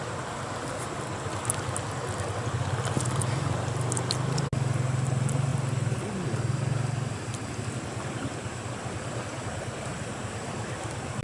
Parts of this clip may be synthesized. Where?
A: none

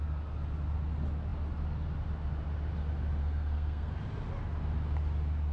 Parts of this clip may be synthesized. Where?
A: 3.2-3.9 (codec, SNAC)